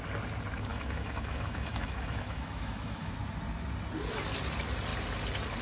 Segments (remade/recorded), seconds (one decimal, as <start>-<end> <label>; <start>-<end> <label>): 0.0-0.7 recorded; 0.7-3.1 remade; 3.1-5.6 recorded